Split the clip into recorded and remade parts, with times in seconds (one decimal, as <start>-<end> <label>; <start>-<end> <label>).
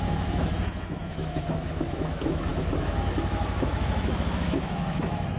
0.0-5.4 remade